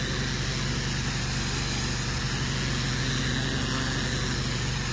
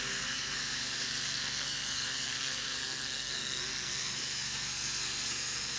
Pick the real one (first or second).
first